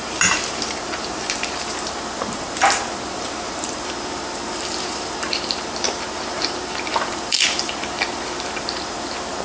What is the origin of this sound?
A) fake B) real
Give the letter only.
A